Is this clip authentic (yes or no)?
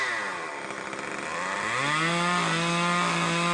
yes